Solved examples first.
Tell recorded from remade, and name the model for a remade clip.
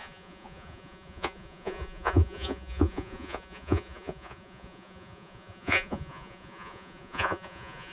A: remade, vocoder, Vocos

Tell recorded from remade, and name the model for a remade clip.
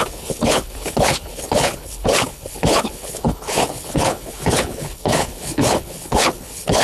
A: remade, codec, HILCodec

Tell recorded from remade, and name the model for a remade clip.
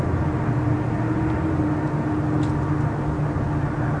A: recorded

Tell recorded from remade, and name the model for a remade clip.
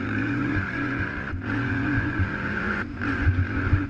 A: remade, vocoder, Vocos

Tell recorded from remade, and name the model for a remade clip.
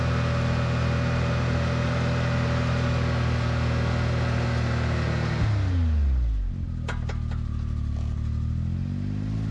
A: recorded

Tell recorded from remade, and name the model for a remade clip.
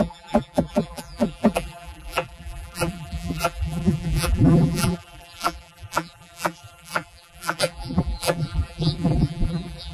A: remade, vocoder, BigVGAN v2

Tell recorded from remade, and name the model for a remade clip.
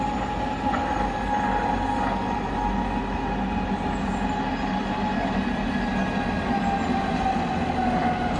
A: recorded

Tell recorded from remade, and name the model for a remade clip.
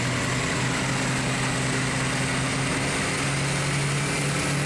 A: recorded